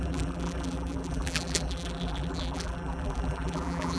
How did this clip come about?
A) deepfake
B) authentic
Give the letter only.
A